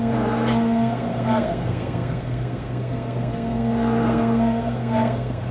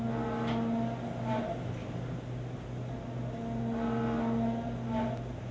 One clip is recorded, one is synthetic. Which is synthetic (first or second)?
first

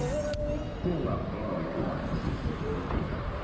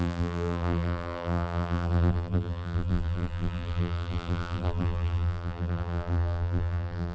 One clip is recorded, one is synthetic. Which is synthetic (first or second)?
second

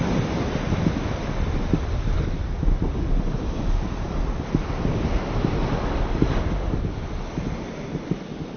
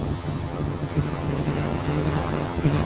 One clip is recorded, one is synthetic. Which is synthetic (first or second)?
second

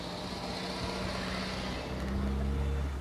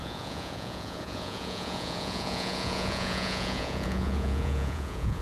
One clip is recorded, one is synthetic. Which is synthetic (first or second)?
second